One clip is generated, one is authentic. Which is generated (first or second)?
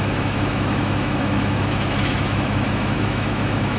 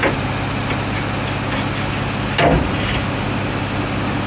first